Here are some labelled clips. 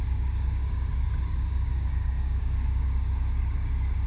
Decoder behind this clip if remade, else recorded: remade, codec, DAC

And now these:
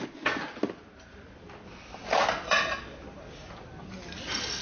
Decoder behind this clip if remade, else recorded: recorded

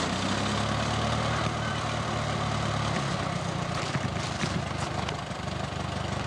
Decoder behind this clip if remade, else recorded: recorded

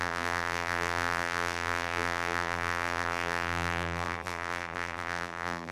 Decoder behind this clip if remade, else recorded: remade, vocoder, BigVGAN v2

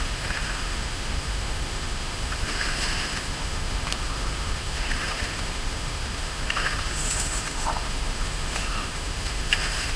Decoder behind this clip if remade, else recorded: remade, autoencoder, DAC-VAE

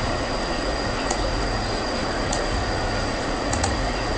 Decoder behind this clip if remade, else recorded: remade, vocoder, Vocos